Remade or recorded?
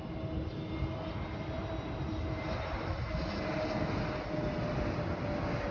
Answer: recorded